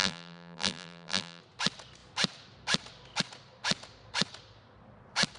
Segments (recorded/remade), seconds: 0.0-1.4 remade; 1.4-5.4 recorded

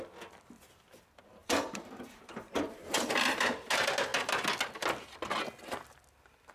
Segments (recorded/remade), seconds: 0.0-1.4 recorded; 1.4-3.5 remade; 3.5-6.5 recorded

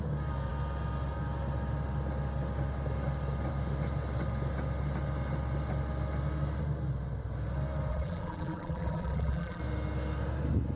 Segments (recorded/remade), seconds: 0.0-7.9 recorded; 7.9-9.6 remade; 9.6-10.8 recorded

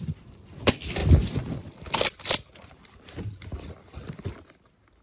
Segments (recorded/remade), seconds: 0.0-5.0 remade

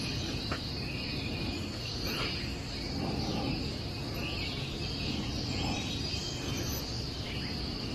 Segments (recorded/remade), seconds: 0.0-7.9 recorded